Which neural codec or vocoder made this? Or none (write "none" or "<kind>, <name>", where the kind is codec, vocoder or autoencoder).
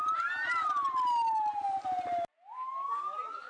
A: none